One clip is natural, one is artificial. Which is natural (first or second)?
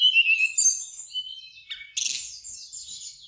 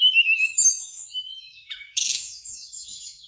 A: first